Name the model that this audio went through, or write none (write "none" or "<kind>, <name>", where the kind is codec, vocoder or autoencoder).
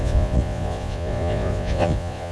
vocoder, Vocos